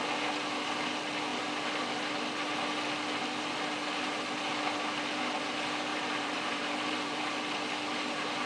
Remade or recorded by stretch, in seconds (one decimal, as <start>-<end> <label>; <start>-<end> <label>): 0.0-5.9 recorded; 5.9-7.2 remade; 7.2-8.5 recorded